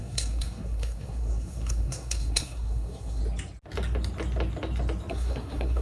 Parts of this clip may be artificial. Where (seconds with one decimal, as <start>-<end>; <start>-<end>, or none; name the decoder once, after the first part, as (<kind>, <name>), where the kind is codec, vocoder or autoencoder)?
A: 0.0-3.2 (codec, SNAC); 5.1-5.8